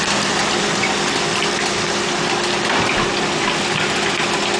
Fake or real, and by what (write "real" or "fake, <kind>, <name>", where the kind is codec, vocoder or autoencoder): real